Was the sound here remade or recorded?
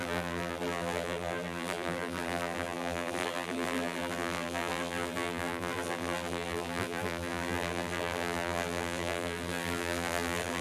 remade